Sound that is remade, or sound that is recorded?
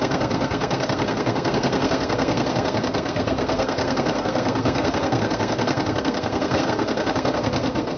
remade